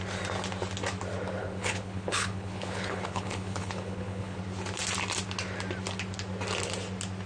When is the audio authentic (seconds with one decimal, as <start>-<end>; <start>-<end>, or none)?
0.0-1.4; 4.4-7.3